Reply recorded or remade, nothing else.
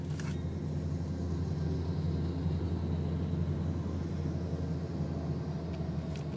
recorded